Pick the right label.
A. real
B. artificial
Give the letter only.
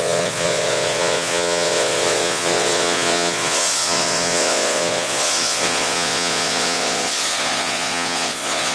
B